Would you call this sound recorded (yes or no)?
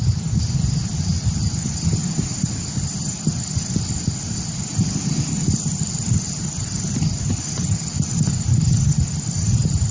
yes